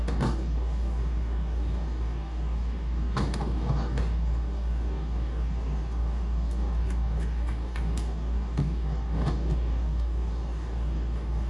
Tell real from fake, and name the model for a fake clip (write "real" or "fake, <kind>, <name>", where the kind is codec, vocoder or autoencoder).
fake, codec, DAC